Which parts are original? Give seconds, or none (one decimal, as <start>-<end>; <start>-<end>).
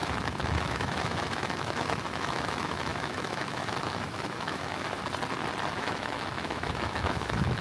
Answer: 5.0-5.7